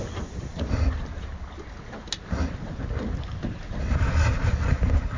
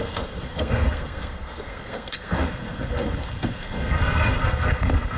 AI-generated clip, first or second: second